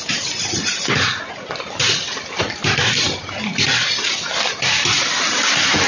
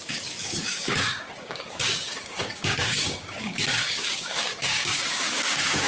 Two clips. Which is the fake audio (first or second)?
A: second